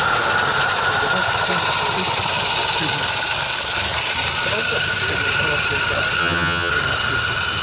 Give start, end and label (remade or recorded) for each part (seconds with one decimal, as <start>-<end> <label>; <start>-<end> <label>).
0.0-6.2 recorded; 6.2-6.7 remade; 6.7-7.6 recorded